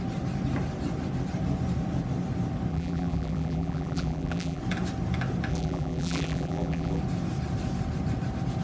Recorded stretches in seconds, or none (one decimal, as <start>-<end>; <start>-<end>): 0.0-2.7; 4.6-5.5; 7.0-8.6